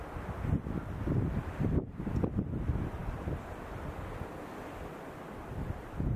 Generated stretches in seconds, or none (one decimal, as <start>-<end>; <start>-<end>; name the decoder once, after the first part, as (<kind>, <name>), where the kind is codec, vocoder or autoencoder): none

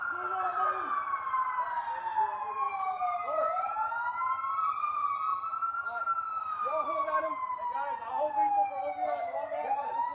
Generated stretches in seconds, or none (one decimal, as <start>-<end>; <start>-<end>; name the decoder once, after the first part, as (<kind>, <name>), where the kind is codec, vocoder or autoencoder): none

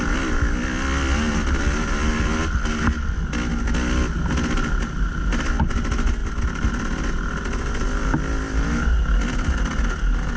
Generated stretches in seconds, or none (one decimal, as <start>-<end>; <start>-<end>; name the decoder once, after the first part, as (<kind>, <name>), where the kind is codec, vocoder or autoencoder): none

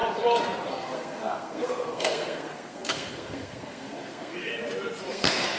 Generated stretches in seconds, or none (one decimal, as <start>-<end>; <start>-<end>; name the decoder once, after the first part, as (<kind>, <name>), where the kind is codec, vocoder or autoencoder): 0.7-4.5 (codec, SNAC); 5.1-5.6

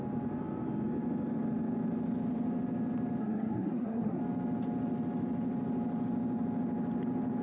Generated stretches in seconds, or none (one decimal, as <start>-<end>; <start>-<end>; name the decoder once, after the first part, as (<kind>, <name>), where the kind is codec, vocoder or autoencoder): 3.2-4.2 (codec, SNAC)